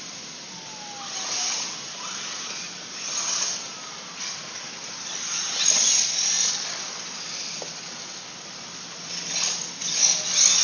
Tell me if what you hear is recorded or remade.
recorded